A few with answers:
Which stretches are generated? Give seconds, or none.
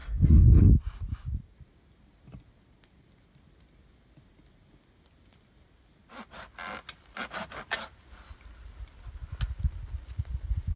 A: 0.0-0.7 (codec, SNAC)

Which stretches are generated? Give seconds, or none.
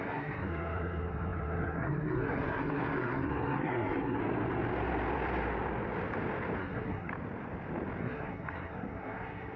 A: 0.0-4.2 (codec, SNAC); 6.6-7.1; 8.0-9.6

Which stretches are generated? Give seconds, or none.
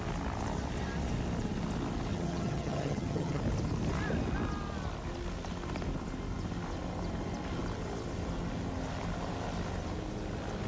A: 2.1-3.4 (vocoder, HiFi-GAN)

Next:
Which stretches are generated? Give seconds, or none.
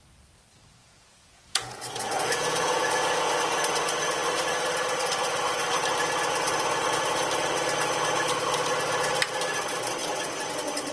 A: 0.8-3.4 (vocoder, Vocos)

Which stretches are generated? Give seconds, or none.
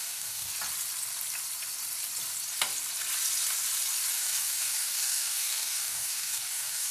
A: 0.0-0.5 (codec, DAC); 4.1-6.9